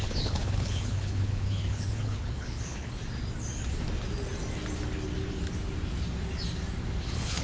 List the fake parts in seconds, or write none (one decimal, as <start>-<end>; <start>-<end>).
0.0-3.0; 7.0-7.4